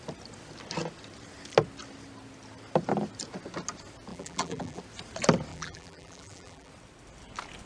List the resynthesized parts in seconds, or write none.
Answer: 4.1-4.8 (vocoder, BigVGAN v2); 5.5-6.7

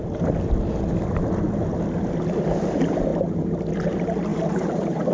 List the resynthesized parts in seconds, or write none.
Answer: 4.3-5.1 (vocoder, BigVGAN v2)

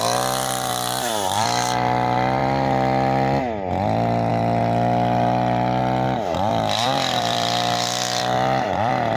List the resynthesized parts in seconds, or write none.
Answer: 0.0-2.4 (vocoder, BigVGAN v2); 4.3-5.8; 6.5-9.2